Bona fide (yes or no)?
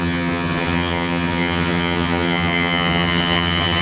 no